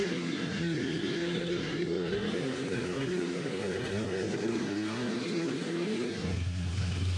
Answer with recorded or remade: remade